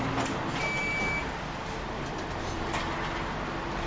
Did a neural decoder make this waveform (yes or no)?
no